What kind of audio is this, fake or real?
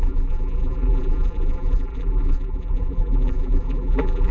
fake